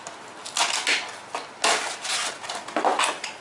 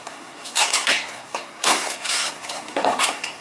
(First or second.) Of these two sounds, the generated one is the second